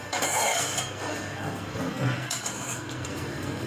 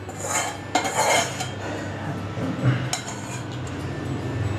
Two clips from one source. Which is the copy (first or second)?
first